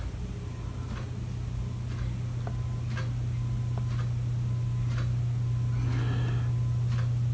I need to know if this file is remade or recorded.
recorded